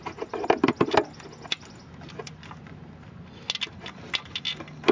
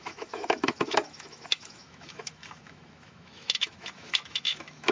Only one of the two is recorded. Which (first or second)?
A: first